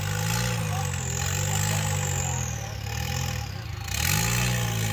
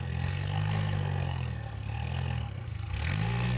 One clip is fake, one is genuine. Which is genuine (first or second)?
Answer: first